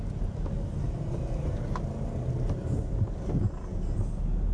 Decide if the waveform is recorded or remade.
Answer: recorded